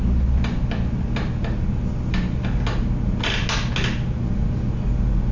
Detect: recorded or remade recorded